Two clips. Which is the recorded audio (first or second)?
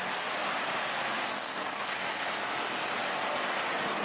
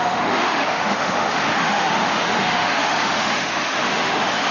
first